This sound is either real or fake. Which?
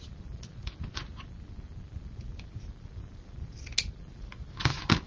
real